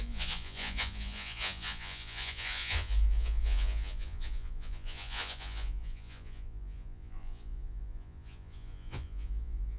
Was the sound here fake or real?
fake